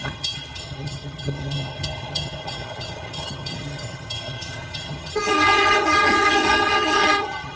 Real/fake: fake